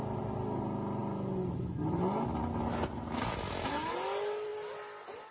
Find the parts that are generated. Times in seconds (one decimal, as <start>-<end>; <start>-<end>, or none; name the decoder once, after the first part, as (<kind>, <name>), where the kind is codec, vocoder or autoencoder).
none

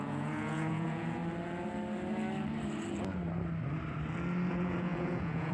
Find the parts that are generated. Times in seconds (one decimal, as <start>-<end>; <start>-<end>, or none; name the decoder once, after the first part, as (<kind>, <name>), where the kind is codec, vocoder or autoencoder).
0.0-1.2 (vocoder, Vocos); 4.5-5.5

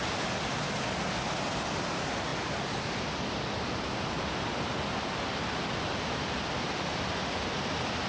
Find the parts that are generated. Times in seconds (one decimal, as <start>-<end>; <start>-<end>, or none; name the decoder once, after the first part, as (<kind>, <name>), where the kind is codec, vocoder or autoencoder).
none

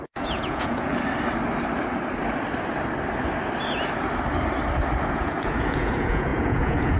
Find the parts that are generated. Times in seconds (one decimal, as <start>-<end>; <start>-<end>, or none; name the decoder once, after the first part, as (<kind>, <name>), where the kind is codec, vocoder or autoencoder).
0.0-0.9 (vocoder, Vocos); 5.1-7.0

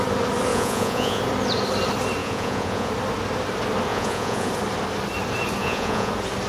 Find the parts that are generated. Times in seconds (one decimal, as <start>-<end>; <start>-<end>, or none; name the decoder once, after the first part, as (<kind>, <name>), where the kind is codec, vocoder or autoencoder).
0.5-1.2 (vocoder, Vocos); 2.2-2.9; 3.9-4.5; 5.6-6.1

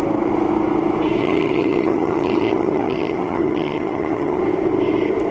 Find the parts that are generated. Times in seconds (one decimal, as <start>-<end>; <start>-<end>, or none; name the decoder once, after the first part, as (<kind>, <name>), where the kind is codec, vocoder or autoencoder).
1.2-4.4 (vocoder, HiFi-GAN)

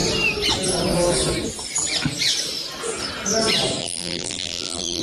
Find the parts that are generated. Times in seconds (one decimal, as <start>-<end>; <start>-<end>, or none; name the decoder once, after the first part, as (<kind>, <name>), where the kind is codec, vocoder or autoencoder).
3.8-5.0 (vocoder, BigVGAN v2)

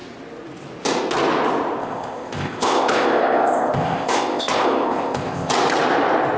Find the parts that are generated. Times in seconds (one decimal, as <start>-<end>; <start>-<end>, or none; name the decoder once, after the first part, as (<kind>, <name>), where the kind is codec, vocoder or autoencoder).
1.8-5.5 (codec, ZipCodec)